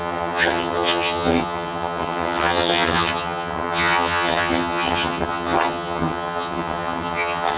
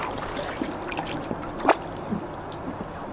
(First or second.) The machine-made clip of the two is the first